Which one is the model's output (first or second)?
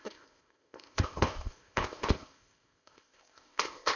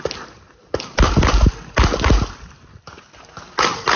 first